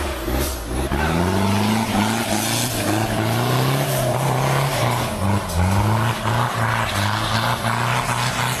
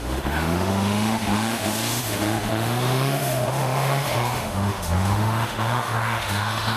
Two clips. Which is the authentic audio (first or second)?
first